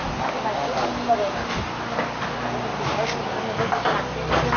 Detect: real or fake real